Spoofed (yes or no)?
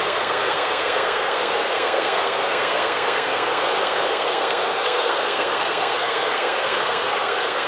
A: yes